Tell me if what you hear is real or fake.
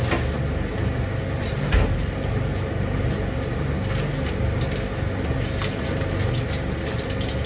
real